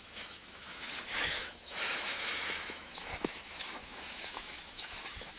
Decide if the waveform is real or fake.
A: fake